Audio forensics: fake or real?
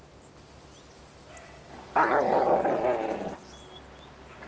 real